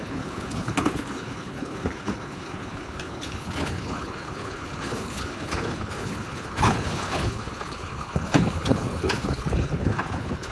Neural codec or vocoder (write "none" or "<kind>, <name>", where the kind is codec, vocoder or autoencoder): codec, HILCodec